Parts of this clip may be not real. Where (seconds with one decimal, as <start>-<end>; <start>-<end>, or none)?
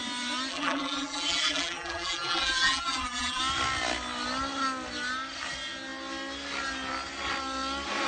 0.5-3.4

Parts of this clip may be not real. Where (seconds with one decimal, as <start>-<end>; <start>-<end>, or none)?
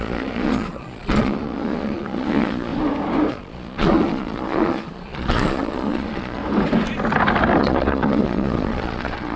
0.0-2.7; 3.3-6.4; 7.6-9.4